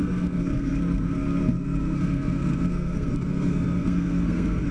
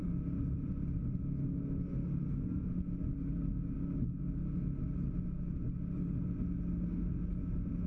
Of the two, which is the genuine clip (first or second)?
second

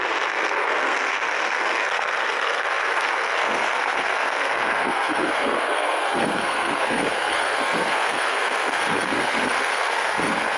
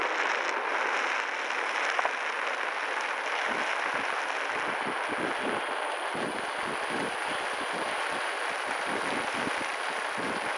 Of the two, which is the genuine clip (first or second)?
second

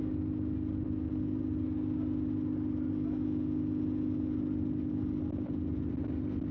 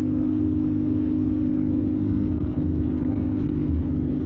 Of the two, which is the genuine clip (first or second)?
first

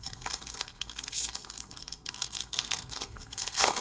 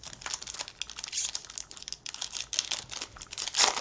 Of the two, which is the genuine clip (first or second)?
second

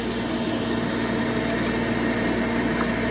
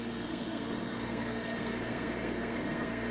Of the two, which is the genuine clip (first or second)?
first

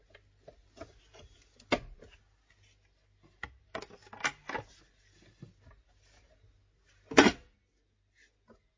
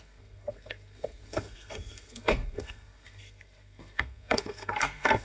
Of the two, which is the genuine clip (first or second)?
first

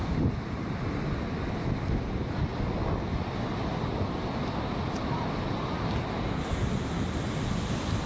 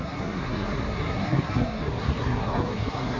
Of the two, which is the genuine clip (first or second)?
first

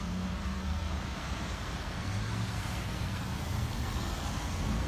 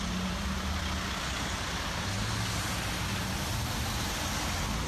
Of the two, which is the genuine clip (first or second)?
second